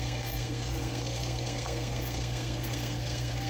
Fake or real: fake